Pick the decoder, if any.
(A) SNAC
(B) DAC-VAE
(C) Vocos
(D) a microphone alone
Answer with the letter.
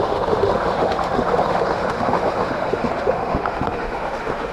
B